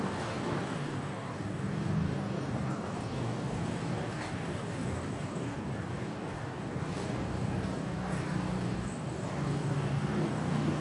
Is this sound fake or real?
fake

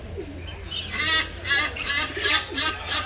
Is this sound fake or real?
real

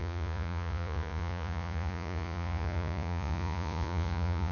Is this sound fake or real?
fake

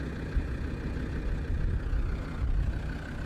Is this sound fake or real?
real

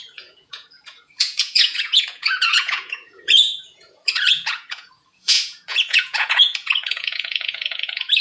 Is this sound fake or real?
fake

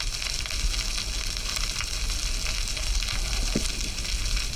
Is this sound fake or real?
real